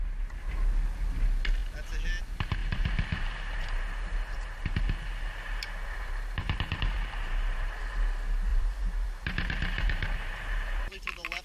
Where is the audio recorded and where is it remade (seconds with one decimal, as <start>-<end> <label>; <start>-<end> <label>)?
0.0-2.6 recorded; 2.6-7.8 remade; 7.8-8.5 recorded; 8.5-11.4 remade